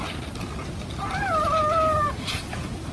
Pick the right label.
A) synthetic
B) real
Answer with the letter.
B